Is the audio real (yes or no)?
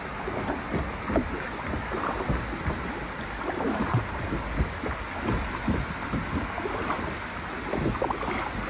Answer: yes